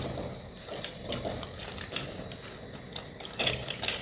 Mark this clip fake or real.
real